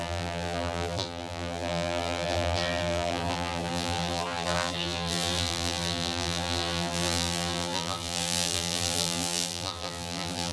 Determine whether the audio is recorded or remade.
remade